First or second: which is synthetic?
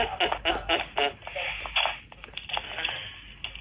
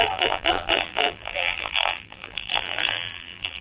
second